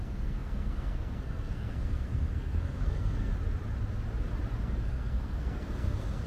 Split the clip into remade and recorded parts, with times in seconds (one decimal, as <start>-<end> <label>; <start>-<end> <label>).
0.0-3.3 remade; 3.3-4.6 recorded; 4.6-6.3 remade